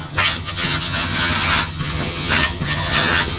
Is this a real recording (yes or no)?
no